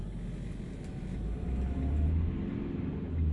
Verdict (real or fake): real